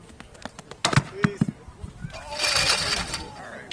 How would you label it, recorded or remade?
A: recorded